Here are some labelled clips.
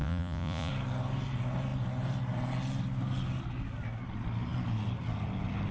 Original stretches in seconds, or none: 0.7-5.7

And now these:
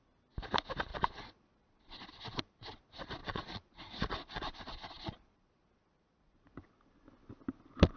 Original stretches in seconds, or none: 0.0-0.9; 2.8-3.2; 6.7-8.0

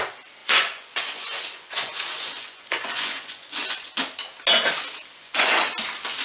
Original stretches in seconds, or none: 0.0-0.4; 3.9-5.2; 5.7-6.2

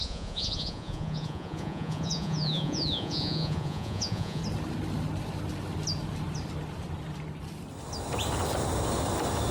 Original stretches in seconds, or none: 4.4-9.5